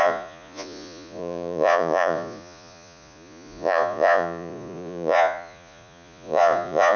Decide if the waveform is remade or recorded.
remade